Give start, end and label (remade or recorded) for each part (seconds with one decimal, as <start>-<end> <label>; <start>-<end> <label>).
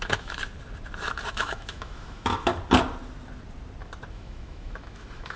0.0-0.4 remade; 0.4-1.3 recorded; 1.3-2.5 remade; 2.5-4.1 recorded; 4.1-5.4 remade